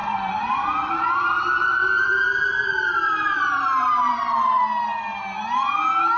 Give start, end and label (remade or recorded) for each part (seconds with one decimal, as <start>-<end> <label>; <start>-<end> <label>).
0.0-0.9 remade; 0.9-1.8 recorded; 1.8-4.6 remade; 4.6-6.2 recorded